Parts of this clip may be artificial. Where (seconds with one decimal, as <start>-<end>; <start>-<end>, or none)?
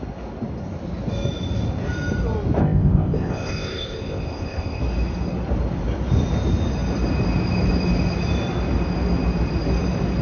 2.6-4.8